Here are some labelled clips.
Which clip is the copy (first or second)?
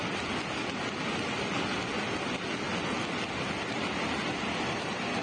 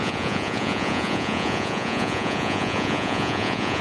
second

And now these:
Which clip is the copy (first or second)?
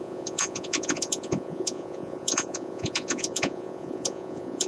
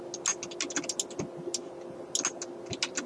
first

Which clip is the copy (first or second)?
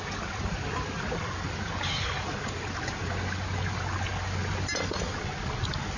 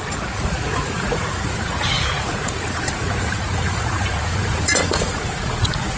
second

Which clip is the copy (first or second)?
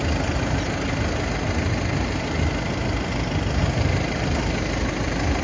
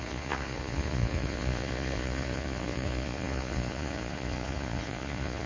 second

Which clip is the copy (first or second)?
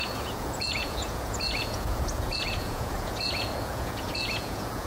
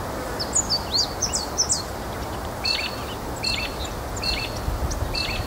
first